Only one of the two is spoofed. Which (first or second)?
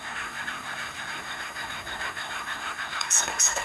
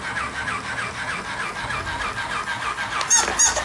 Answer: first